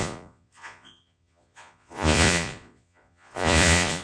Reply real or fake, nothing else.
fake